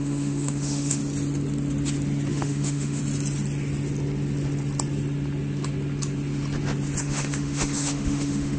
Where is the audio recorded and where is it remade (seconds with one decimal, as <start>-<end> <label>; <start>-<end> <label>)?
0.0-1.0 remade; 1.0-2.3 recorded; 2.3-3.0 remade; 3.0-7.0 recorded; 7.0-8.6 remade